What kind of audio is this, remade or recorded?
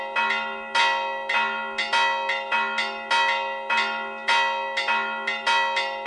recorded